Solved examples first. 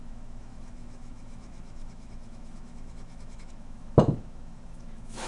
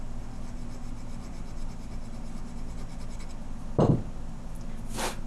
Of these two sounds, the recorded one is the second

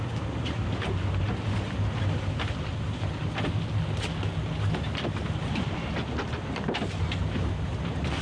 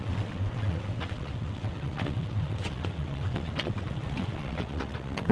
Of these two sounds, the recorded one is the first